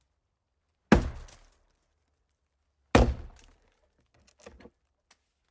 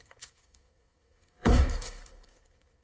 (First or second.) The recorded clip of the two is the first